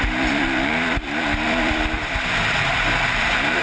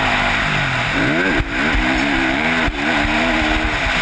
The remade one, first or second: first